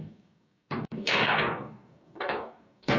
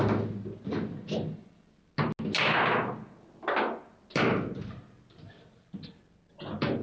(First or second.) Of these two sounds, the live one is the second